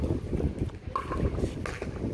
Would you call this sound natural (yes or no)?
yes